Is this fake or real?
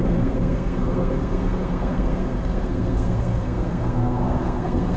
fake